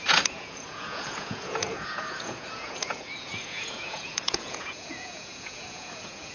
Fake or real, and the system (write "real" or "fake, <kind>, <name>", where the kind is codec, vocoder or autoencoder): fake, vocoder, Vocos